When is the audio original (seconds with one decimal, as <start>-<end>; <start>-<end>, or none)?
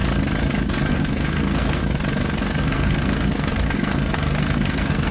0.0-0.9; 1.8-2.6